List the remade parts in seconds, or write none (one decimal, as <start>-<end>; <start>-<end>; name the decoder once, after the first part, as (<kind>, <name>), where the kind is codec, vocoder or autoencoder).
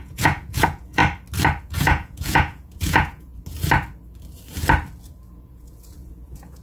0.0-1.0 (vocoder, Vocos); 1.6-3.3; 5.3-6.6